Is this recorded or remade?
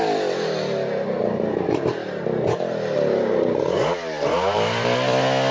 recorded